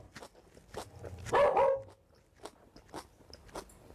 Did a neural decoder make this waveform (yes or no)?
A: no